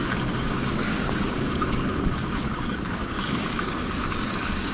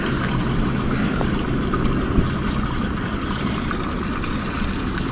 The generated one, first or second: first